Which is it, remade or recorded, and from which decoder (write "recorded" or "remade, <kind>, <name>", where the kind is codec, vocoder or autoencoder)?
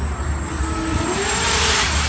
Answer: recorded